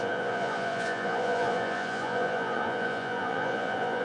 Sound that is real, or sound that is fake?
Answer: fake